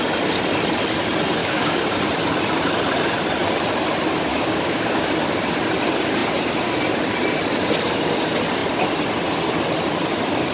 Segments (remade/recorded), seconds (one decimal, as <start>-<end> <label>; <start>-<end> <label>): 0.0-1.4 recorded; 1.4-2.0 remade; 2.0-4.3 recorded; 4.3-5.1 remade; 5.1-10.5 recorded